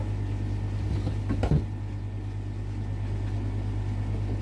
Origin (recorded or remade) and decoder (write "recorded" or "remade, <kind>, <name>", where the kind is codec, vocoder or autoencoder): recorded